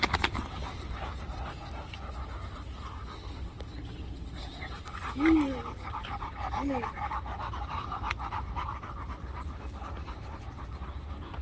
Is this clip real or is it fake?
real